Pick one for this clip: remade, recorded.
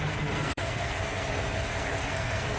remade